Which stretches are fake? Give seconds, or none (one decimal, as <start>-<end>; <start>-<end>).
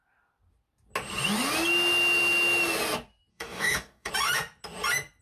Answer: 3.3-4.1